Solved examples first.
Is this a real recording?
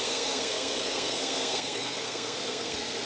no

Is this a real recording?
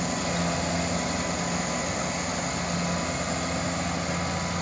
yes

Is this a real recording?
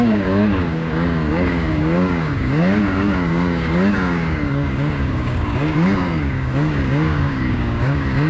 no